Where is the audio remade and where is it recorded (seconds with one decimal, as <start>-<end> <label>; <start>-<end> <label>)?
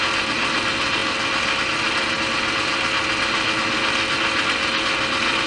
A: 0.0-5.5 recorded